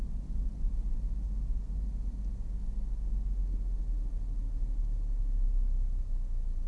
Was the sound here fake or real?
real